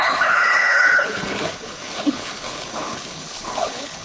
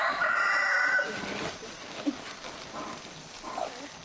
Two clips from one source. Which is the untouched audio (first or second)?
second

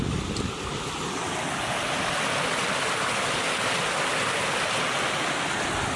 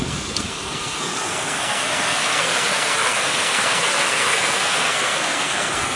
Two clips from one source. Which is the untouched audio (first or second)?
first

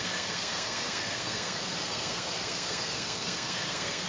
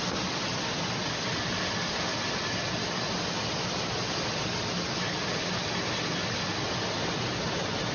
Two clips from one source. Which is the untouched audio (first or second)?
second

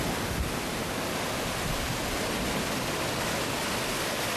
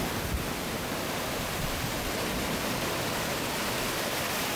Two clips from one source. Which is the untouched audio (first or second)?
first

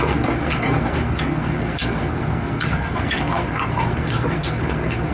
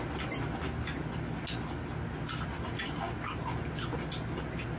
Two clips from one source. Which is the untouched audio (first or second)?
second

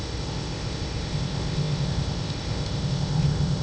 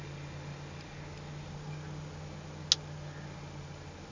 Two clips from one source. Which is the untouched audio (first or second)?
second